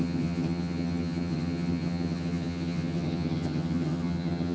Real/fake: fake